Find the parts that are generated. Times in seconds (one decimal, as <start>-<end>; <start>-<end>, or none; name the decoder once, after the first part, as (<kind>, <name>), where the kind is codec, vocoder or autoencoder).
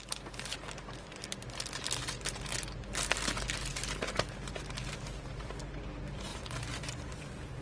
none